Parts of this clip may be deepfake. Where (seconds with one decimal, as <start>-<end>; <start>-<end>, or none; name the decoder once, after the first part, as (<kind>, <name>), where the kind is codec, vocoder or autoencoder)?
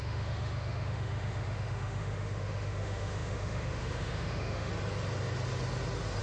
0.0-4.7 (autoencoder, DAC-VAE)